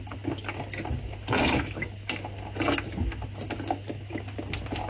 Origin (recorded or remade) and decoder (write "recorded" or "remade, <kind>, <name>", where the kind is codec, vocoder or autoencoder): recorded